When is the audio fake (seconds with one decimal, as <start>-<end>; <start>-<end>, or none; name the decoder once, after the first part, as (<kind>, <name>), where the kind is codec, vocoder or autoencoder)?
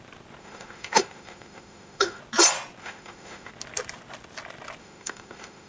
0.4-2.2 (autoencoder, DAC-VAE); 2.8-3.5; 4.8-5.7